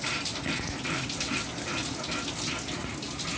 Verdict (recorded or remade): recorded